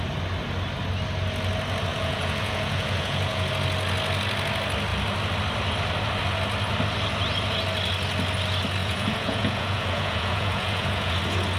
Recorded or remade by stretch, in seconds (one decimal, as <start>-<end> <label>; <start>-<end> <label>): 0.0-1.9 recorded; 1.9-3.5 remade; 3.5-8.8 recorded; 8.8-11.2 remade; 11.2-11.6 recorded